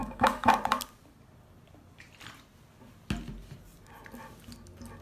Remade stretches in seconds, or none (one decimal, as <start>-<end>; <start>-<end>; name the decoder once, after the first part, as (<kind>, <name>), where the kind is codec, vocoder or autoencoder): 0.0-0.5 (autoencoder, DAC-VAE)